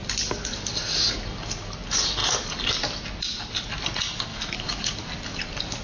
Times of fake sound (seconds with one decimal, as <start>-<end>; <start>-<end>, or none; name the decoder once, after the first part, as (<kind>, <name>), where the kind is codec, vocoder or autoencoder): 4.3-4.9 (autoencoder, DAC-VAE)